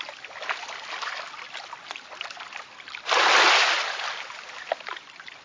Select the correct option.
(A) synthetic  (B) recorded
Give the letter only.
B